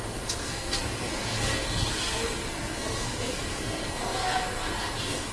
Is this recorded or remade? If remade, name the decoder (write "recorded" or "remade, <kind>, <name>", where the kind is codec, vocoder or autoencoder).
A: remade, codec, SNAC